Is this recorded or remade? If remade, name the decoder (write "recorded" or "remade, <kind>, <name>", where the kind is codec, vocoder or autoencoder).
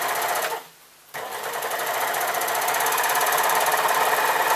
recorded